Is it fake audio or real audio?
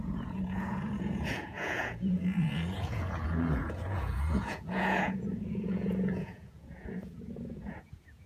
fake